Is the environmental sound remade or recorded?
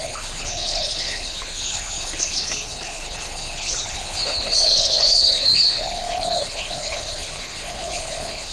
remade